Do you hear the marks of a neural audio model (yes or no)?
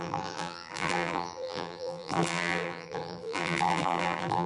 yes